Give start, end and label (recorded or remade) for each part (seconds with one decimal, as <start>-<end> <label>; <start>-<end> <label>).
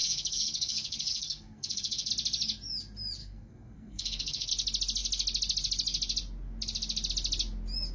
0.0-2.1 remade; 2.1-3.2 recorded; 3.2-4.5 remade; 4.5-7.9 recorded